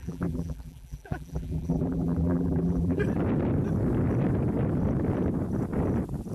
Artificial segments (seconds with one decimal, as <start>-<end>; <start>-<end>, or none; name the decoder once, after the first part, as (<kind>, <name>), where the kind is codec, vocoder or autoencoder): 0.0-3.0 (vocoder, BigVGAN v2)